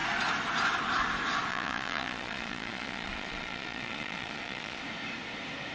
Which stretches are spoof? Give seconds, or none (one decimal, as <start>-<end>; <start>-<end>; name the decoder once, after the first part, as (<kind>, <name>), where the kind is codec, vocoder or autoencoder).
1.5-4.8 (vocoder, Vocos)